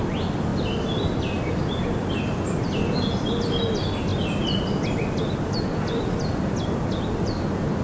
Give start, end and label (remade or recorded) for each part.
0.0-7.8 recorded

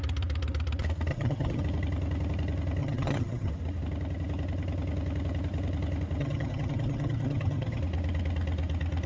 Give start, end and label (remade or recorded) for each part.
0.0-1.1 recorded; 1.1-1.6 remade; 1.6-2.8 recorded; 2.8-3.5 remade; 3.5-6.2 recorded; 6.2-7.8 remade; 7.8-9.1 recorded